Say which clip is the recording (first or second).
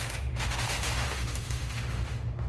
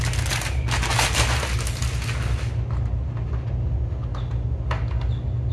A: second